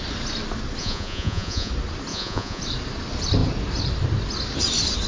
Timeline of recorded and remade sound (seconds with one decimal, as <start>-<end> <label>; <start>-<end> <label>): 0.0-0.8 recorded; 0.8-1.7 remade; 1.7-2.1 recorded; 2.1-2.6 remade; 2.6-5.1 recorded